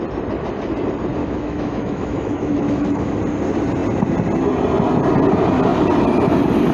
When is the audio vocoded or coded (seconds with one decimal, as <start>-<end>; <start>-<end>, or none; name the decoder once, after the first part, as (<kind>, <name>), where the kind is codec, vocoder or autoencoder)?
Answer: 1.2-3.2 (autoencoder, DAC-VAE)